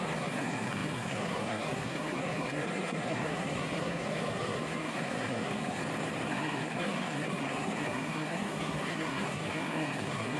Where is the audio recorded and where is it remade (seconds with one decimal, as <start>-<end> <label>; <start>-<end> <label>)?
0.0-5.8 remade; 5.8-6.3 recorded; 6.3-10.4 remade